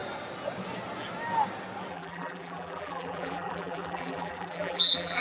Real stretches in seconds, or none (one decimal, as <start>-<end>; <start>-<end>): 0.0-1.9